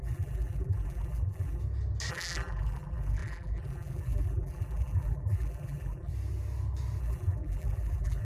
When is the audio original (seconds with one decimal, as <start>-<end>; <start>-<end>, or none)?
1.6-2.1; 6.1-7.0